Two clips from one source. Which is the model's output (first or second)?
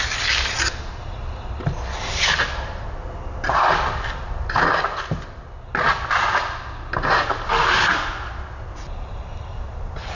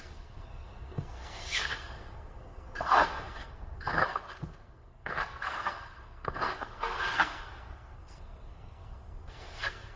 second